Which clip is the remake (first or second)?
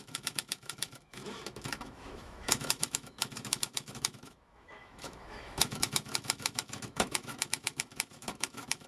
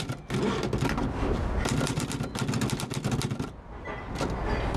first